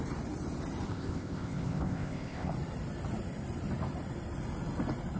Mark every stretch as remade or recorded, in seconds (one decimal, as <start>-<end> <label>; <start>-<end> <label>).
0.0-0.9 recorded; 0.9-2.5 remade; 2.5-5.2 recorded